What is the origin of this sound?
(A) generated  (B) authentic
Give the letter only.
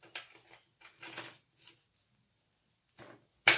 B